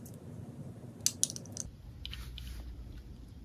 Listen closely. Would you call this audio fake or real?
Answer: real